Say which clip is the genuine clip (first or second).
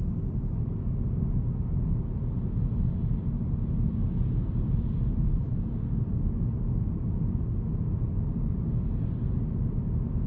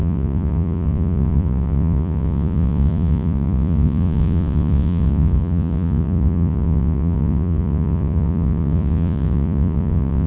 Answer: first